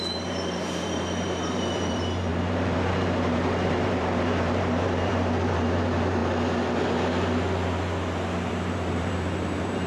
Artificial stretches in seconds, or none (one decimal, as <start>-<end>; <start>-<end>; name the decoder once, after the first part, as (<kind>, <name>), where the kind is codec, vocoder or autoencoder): 0.0-6.2 (vocoder, BigVGAN v2); 8.5-9.9